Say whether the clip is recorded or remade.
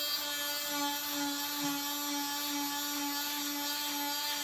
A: recorded